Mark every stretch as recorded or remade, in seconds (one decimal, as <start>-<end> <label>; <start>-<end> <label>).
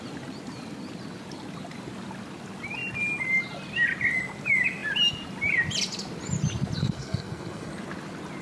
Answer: 0.0-6.8 recorded; 6.8-7.7 remade; 7.7-8.4 recorded